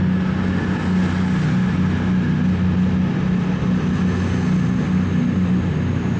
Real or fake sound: real